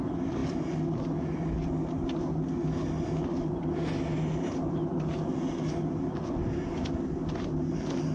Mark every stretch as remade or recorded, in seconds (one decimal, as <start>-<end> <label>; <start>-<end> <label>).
0.0-8.1 recorded

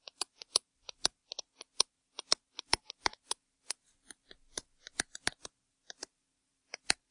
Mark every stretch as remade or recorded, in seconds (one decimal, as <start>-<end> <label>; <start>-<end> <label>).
0.0-1.2 remade; 1.2-1.9 recorded; 1.9-4.7 remade; 4.7-5.4 recorded; 5.4-7.1 remade

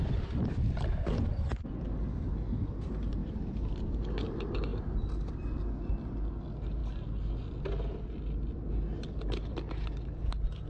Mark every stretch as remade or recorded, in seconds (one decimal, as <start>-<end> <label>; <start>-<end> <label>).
0.0-3.2 recorded; 3.2-3.8 remade; 3.8-10.7 recorded

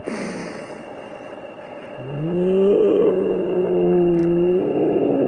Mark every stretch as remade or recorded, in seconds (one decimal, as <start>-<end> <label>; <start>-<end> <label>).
0.0-5.3 recorded

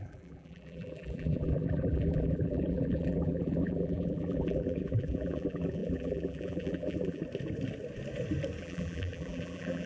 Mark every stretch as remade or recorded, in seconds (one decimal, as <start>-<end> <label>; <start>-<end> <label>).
0.0-7.2 remade; 7.2-8.6 recorded; 8.6-9.9 remade

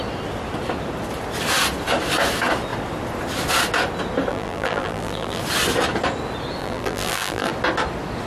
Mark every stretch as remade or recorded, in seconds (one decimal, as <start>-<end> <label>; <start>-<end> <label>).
0.0-4.3 recorded; 4.3-5.4 remade; 5.4-6.6 recorded; 6.6-7.5 remade; 7.5-8.3 recorded

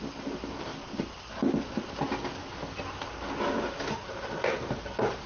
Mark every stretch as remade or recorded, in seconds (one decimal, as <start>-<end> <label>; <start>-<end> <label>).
0.0-0.7 remade; 0.7-3.9 recorded; 3.9-5.3 remade

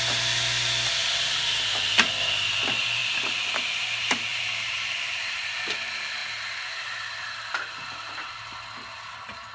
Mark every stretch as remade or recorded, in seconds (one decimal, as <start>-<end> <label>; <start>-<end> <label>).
0.0-3.0 recorded; 3.0-3.5 remade; 3.5-4.3 recorded; 4.3-5.8 remade; 5.8-9.5 recorded